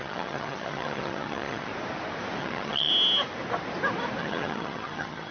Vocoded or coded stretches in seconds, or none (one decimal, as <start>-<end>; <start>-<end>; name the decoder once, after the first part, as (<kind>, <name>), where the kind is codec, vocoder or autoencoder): 0.0-1.7 (vocoder, HiFi-GAN); 2.4-2.9; 4.2-5.3